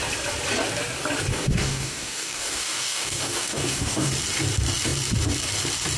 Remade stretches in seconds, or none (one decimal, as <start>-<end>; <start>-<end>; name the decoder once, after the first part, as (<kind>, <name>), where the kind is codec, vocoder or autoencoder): 1.3-4.1 (codec, DAC)